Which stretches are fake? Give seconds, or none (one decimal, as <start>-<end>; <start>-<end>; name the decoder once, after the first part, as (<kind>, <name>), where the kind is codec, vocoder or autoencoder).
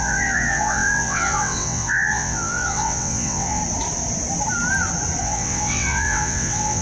0.0-3.6 (vocoder, WaveNeXt); 5.2-6.8